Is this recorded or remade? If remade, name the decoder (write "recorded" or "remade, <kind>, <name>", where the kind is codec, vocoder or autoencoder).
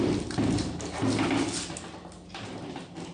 recorded